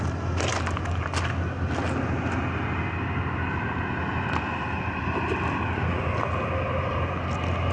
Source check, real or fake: real